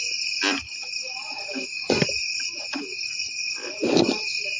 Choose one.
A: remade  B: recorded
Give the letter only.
B